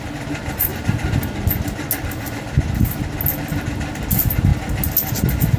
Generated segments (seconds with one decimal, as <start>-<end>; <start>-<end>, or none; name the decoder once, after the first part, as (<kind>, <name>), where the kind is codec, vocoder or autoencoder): none

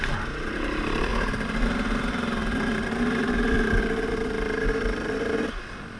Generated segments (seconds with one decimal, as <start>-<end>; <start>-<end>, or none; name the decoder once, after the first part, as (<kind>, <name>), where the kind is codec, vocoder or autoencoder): 0.0-1.1 (vocoder, BigVGAN v2); 2.0-6.0

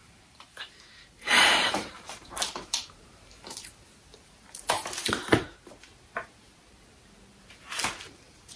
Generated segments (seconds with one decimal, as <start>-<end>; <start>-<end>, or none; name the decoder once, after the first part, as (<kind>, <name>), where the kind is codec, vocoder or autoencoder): 0.0-3.8 (vocoder, BigVGAN v2)

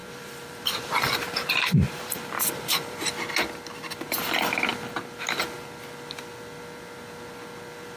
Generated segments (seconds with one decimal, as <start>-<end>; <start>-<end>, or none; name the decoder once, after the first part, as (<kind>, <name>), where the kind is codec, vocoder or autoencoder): 0.0-3.0 (vocoder, BigVGAN v2)

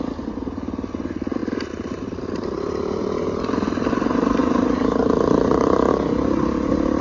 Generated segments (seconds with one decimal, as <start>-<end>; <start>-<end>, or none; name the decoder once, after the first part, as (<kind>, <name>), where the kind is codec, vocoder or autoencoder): 1.4-3.9 (vocoder, BigVGAN v2); 4.4-5.9

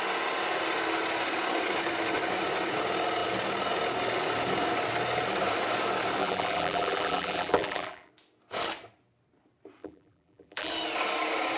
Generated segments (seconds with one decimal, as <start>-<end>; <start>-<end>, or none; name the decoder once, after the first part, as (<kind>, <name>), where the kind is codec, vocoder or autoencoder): 6.2-8.1 (vocoder, BigVGAN v2); 9.8-10.7